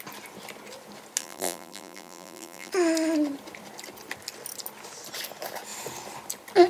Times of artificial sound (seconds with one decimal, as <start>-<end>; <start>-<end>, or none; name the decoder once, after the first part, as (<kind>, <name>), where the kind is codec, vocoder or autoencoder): 1.2-2.7 (vocoder, BigVGAN v2)